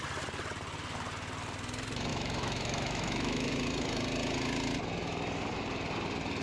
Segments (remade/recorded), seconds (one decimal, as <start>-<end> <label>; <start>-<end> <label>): 0.0-2.1 recorded; 2.1-3.5 remade; 3.5-6.4 recorded